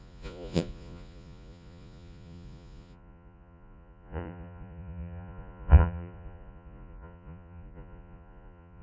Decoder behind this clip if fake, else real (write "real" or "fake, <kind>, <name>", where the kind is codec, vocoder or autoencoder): fake, vocoder, Vocos